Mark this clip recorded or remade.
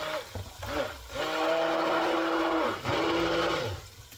recorded